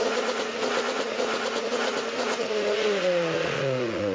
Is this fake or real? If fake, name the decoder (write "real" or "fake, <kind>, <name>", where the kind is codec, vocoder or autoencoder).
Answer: fake, vocoder, Vocos